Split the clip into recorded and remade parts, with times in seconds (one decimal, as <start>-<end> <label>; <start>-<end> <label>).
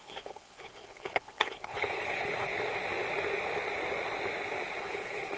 0.0-2.5 remade; 2.5-4.8 recorded; 4.8-5.4 remade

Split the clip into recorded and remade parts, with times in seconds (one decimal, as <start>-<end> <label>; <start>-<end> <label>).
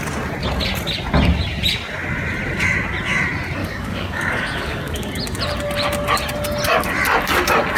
0.0-3.6 recorded; 3.6-5.1 remade; 5.1-7.8 recorded